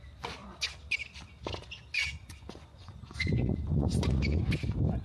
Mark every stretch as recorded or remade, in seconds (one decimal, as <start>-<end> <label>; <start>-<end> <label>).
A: 0.0-2.0 recorded; 2.0-4.4 remade; 4.4-5.0 recorded